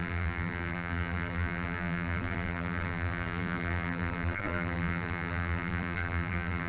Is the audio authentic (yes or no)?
no